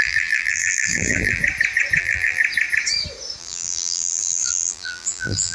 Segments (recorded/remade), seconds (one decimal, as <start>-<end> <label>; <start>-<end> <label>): 0.0-1.4 remade; 1.4-2.0 recorded; 2.0-2.4 remade; 2.4-3.4 recorded; 3.4-5.5 remade